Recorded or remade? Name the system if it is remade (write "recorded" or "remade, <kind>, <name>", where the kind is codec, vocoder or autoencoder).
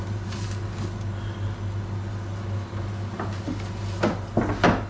recorded